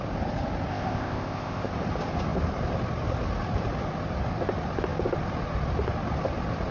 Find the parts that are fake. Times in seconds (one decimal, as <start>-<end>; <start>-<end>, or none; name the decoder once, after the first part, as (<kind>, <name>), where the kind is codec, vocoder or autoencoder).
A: 0.7-1.7 (codec, ZipCodec)